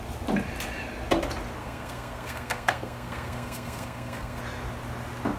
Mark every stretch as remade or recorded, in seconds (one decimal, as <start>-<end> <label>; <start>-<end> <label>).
0.0-1.6 recorded; 1.6-4.4 remade; 4.4-5.4 recorded